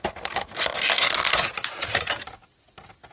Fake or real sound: real